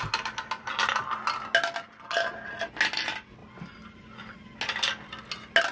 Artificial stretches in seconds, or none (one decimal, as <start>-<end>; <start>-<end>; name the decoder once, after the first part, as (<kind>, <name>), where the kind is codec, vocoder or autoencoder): none